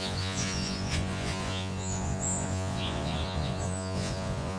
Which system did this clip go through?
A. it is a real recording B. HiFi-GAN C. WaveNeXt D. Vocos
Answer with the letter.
D